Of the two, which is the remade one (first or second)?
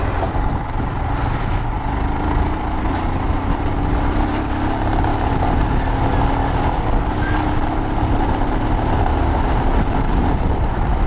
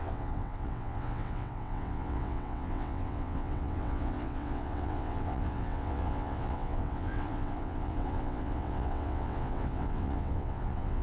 second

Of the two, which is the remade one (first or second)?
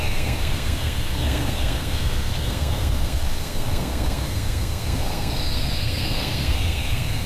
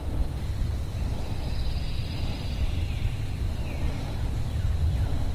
first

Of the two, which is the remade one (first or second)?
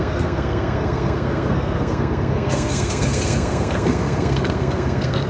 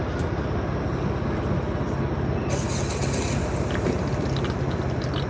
first